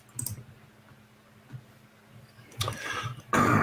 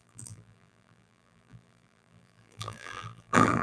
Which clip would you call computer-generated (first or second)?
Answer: second